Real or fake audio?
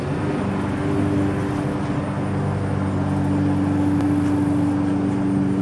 real